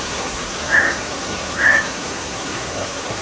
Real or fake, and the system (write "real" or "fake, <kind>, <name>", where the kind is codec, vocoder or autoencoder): fake, codec, SNAC